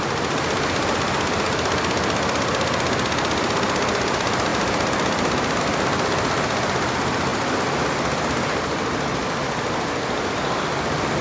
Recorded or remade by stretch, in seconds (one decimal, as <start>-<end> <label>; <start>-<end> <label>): 0.0-11.2 recorded